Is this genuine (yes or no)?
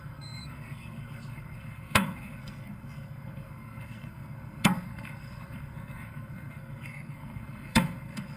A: no